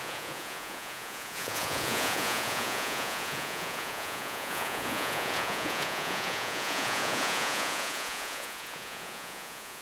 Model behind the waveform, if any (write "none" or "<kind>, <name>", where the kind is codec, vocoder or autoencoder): vocoder, Vocos